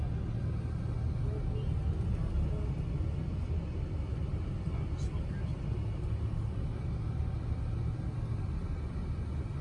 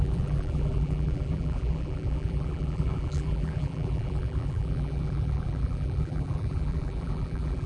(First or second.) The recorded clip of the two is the first